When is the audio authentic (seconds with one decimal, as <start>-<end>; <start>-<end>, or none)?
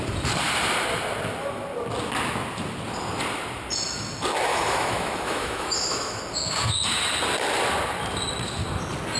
0.0-4.5; 6.2-9.2